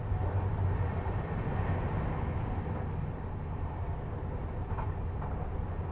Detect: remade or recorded recorded